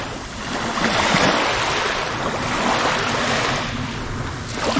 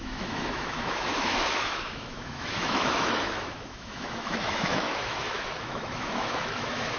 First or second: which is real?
first